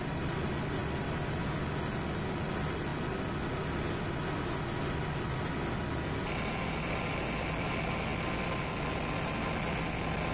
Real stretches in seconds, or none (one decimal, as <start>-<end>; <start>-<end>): 0.0-10.3